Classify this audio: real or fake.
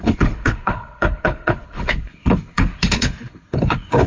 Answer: fake